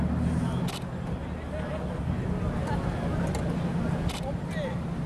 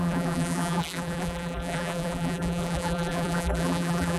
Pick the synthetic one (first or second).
second